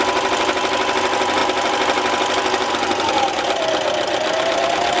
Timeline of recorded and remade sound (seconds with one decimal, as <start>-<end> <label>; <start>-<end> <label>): 0.0-5.0 recorded